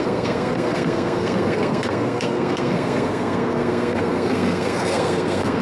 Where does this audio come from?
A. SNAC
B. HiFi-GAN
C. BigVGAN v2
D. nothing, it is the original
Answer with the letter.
A